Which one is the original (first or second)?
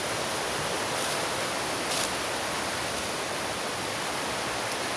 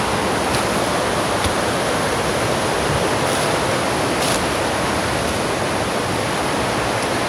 second